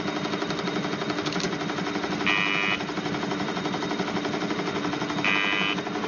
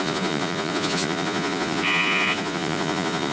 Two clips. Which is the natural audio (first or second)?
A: first